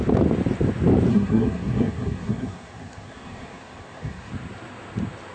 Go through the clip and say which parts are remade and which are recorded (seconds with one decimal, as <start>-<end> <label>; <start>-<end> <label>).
0.0-1.1 recorded; 1.1-4.3 remade; 4.3-5.3 recorded